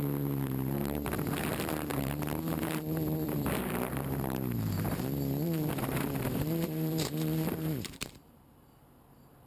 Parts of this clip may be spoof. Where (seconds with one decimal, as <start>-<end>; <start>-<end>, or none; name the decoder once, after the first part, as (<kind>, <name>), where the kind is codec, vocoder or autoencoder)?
0.0-9.5 (vocoder, BigVGAN v2)

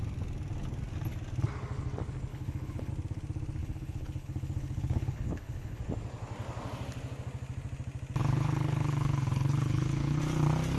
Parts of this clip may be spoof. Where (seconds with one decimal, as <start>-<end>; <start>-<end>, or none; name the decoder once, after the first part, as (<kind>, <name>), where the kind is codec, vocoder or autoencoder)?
2.3-2.9 (codec, HILCodec); 3.6-5.8; 8.2-10.2

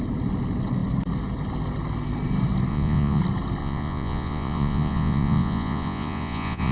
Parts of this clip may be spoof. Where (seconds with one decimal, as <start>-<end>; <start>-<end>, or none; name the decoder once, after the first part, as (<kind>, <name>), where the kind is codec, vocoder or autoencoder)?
2.7-3.2 (vocoder, Vocos); 3.6-6.7

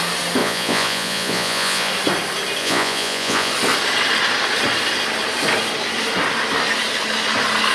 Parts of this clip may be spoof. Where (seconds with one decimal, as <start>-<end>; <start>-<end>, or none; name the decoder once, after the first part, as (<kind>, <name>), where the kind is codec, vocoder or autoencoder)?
0.4-1.9 (vocoder, Vocos); 2.6-3.5

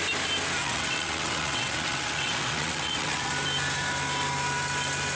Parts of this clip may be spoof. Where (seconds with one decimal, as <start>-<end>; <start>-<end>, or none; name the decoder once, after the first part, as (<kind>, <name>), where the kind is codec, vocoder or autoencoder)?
0.6-3.3 (vocoder, WaveNeXt)

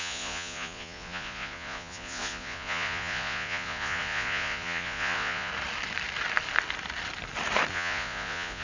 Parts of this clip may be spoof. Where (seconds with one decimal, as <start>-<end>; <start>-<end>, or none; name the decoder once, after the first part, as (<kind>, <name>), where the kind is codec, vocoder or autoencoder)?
0.0-5.5 (vocoder, Vocos); 7.7-8.6

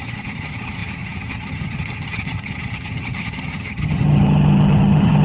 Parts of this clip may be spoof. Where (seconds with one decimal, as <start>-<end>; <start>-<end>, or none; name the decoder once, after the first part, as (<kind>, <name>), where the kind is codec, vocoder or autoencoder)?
0.0-5.2 (vocoder, HiFi-GAN)